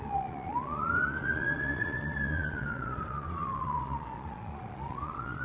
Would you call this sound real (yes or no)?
no